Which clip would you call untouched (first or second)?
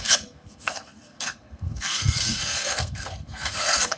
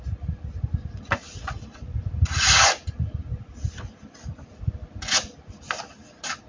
second